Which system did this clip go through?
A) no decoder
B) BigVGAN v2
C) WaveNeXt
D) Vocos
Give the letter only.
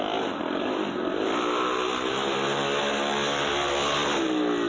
A